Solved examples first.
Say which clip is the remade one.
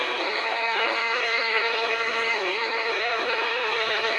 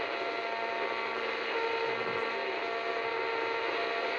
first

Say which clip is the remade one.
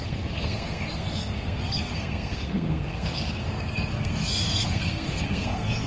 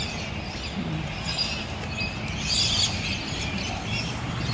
first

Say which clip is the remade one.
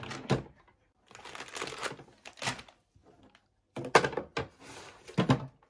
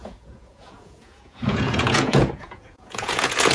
second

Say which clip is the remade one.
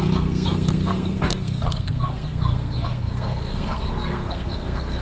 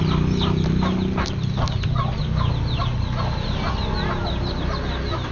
first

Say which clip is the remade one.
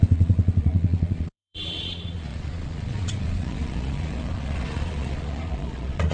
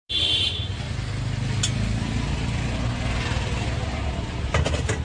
first